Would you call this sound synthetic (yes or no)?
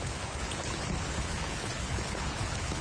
yes